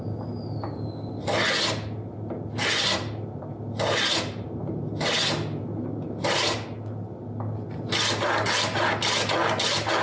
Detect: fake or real real